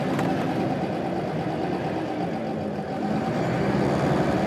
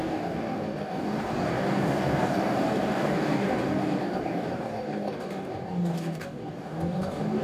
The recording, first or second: first